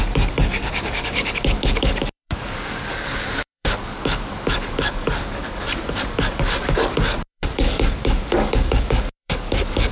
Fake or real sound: fake